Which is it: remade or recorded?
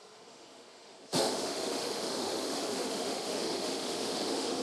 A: remade